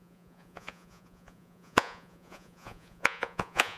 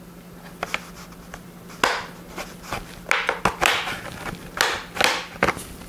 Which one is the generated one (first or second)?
first